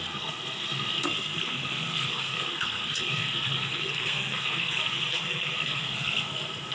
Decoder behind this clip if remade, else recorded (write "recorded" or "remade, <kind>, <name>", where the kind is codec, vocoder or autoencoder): remade, codec, SNAC